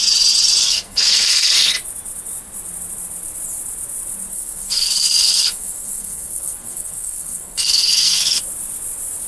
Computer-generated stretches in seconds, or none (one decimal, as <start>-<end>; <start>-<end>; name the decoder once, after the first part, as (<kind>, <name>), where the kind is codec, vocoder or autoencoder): 0.6-1.7 (codec, SNAC); 4.3-8.4